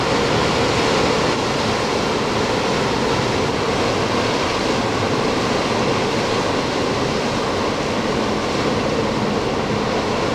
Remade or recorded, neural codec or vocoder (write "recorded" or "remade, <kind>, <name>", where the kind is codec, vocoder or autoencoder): recorded